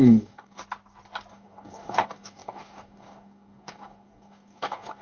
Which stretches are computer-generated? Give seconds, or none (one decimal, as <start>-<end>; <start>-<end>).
0.0-0.6; 1.3-5.0